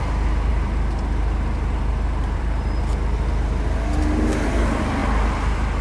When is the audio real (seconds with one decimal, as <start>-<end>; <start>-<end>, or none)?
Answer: 0.0-0.5; 4.0-5.8